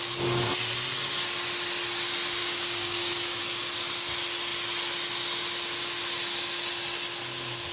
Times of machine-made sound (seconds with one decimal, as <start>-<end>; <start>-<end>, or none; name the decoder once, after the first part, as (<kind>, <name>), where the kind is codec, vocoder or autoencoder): 2.4-3.4 (codec, DAC)